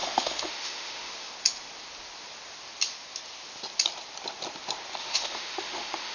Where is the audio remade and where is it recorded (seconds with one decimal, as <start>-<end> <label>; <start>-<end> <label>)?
0.0-1.3 remade; 1.3-5.0 recorded; 5.0-6.1 remade